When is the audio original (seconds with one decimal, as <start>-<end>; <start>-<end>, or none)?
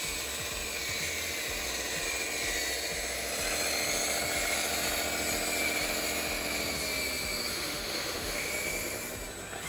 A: 0.0-7.5; 8.5-9.7